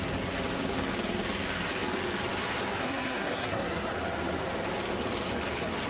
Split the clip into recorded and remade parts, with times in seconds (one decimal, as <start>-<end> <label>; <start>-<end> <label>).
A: 0.0-2.8 recorded; 2.8-3.9 remade; 3.9-5.9 recorded